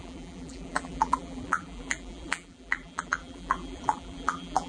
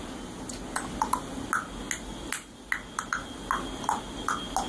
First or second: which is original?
second